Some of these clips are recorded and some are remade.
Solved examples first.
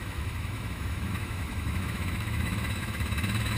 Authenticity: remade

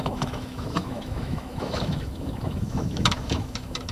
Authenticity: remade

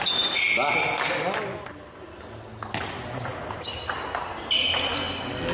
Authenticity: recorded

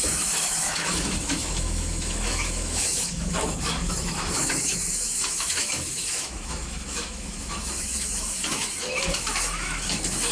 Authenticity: remade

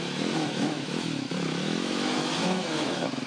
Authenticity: remade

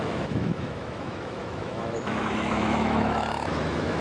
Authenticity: remade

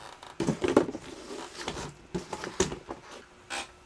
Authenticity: recorded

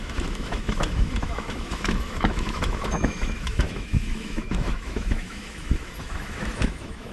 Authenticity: remade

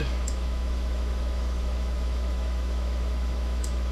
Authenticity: remade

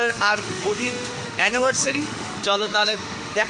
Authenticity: remade